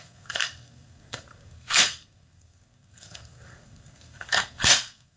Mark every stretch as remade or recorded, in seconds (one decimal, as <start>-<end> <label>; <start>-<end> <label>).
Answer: 0.0-5.2 remade